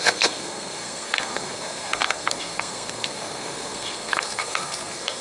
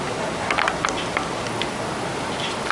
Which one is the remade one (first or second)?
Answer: first